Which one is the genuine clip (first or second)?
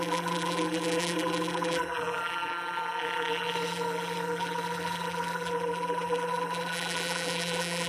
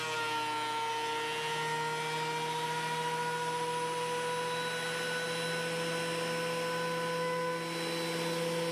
second